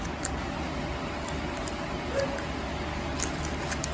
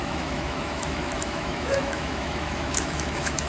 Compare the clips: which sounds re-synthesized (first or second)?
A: second